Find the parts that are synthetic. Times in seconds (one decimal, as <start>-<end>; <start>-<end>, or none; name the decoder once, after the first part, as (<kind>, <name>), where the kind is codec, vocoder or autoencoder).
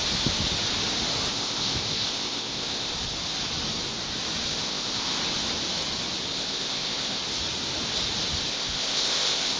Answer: 1.3-2.9 (codec, ZipCodec); 4.5-5.2; 6.3-7.2; 8.5-9.6